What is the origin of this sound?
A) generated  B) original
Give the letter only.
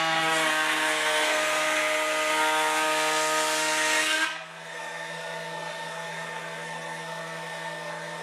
A